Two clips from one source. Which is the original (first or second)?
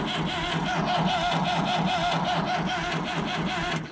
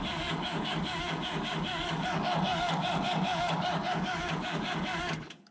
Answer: first